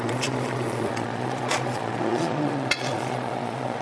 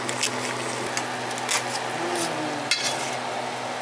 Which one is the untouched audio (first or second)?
second